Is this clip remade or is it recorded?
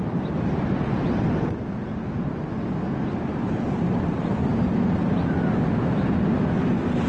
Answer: recorded